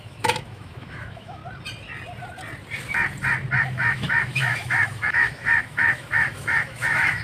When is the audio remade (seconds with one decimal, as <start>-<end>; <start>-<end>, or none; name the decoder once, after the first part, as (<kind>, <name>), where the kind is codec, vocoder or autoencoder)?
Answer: 0.0-1.4 (autoencoder, DAC-VAE); 3.6-7.2